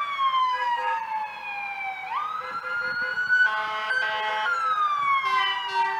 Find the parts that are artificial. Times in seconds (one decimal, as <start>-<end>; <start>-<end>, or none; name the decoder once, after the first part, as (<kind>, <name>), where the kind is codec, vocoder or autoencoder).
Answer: 0.4-1.0 (codec, DAC)